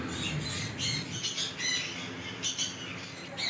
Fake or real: real